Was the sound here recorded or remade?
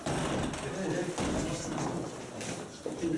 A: recorded